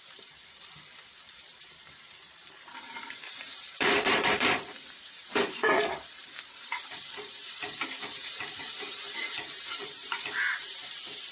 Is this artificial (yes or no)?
yes